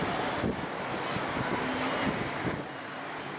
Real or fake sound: real